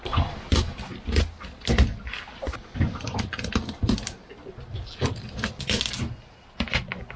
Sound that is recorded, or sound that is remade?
recorded